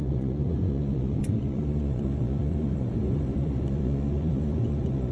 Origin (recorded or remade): remade